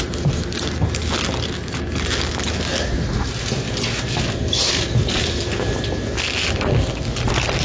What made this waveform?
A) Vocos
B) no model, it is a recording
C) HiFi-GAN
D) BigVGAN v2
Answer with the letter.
B